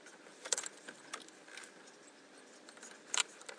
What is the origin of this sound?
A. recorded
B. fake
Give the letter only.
A